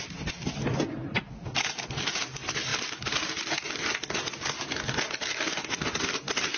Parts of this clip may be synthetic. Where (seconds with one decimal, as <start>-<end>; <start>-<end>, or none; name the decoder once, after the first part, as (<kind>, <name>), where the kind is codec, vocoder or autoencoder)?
none